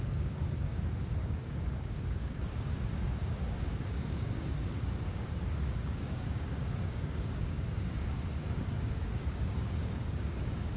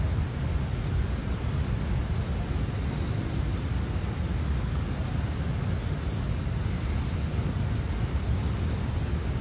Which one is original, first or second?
second